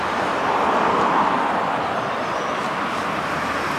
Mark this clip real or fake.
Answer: real